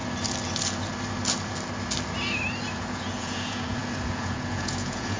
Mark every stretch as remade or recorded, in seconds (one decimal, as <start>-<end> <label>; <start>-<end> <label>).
0.0-2.7 recorded; 2.7-5.2 remade